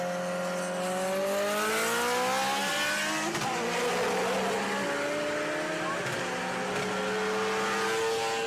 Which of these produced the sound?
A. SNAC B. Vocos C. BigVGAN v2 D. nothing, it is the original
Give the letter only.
D